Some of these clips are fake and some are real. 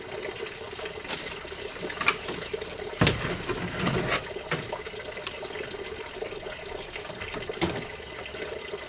real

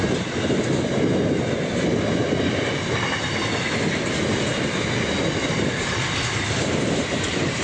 real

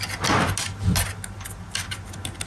real